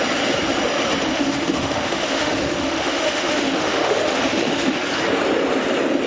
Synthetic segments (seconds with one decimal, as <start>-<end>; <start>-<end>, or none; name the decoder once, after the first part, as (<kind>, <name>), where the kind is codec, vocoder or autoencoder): 1.1-4.8 (autoencoder, DAC-VAE)